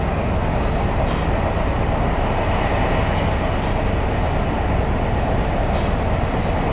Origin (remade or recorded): recorded